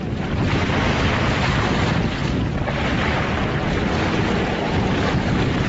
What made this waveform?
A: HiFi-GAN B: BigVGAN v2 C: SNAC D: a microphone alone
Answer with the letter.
D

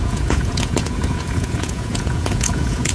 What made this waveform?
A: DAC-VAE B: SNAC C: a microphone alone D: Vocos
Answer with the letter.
D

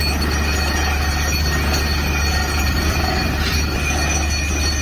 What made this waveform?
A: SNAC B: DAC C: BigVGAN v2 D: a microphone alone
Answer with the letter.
D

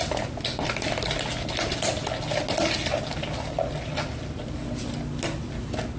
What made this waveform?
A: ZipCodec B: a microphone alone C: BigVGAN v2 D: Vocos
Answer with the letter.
B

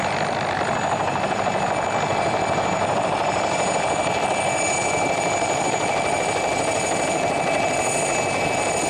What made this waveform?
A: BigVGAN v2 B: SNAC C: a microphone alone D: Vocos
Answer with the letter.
C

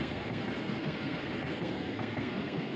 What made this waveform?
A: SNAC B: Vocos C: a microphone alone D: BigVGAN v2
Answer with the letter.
A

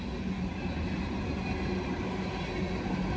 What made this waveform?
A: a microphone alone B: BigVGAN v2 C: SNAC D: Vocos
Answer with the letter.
A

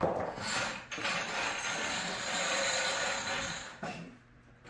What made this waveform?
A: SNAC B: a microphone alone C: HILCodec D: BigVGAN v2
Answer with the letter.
B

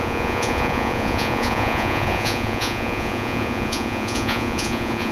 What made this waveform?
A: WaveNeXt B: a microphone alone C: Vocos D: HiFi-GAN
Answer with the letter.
C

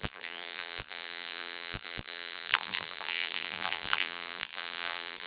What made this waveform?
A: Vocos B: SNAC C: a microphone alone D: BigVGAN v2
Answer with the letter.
D